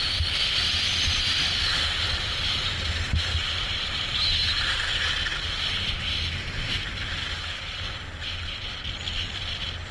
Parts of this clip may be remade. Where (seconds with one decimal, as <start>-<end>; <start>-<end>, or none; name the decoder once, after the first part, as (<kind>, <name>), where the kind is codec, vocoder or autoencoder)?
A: none